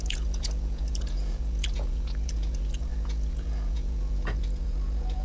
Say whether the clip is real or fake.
fake